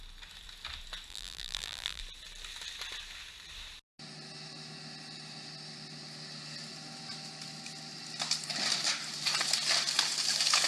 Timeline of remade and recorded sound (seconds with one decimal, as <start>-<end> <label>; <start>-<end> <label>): 0.0-1.1 recorded; 1.1-2.0 remade; 2.0-10.7 recorded